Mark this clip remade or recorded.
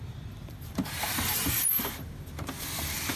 remade